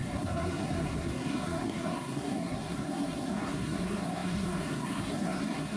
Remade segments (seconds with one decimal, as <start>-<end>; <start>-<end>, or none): 0.0-5.8